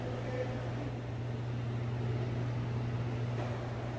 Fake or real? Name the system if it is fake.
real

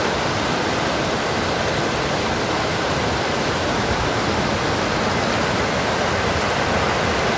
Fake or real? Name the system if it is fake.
real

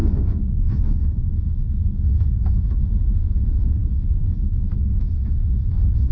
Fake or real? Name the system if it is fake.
fake, autoencoder, DAC-VAE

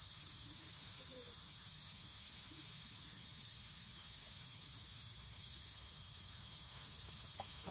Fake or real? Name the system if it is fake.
fake, autoencoder, DAC-VAE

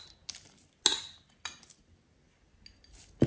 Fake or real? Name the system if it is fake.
real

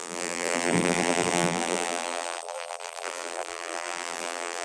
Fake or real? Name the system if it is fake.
fake, vocoder, BigVGAN v2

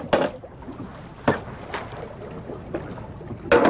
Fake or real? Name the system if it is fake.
real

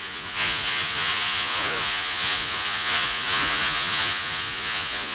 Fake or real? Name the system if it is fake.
fake, vocoder, Vocos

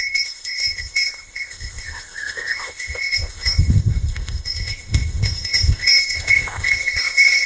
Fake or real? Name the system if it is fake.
fake, codec, ZipCodec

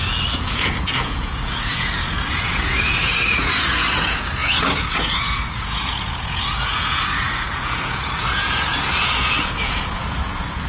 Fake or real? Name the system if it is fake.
fake, vocoder, Vocos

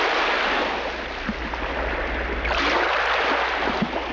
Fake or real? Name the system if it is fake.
real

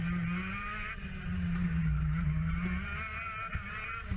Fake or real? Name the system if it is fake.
real